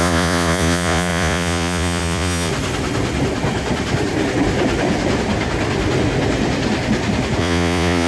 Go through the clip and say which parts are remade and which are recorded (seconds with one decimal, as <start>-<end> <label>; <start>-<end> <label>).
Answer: 0.0-2.5 remade; 2.5-7.4 recorded; 7.4-8.1 remade